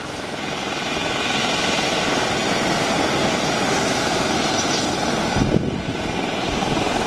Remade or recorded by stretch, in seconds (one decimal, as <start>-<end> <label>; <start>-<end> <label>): 0.0-7.1 recorded